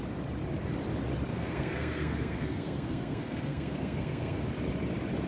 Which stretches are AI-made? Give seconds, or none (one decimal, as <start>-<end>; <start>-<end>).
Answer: 1.3-4.5